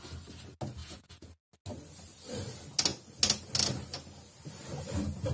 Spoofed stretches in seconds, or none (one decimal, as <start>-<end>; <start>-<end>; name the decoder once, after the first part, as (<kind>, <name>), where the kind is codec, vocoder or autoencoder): 0.8-1.3 (vocoder, Vocos)